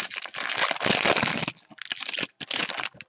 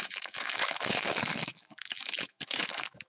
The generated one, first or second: second